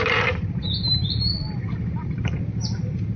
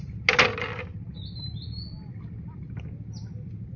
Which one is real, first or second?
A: second